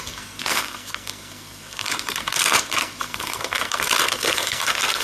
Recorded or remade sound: remade